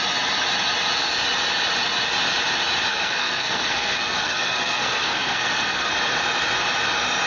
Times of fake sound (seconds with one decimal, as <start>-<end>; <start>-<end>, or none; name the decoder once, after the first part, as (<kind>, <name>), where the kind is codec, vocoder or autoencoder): 2.9-5.9 (codec, SNAC)